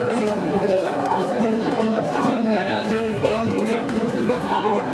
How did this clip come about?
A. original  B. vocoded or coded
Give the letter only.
B